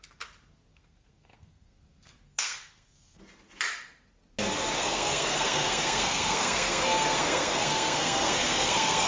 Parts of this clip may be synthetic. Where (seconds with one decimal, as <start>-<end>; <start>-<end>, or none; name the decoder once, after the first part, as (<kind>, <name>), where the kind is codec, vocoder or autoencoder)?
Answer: 0.7-3.2 (codec, SNAC); 4.8-9.1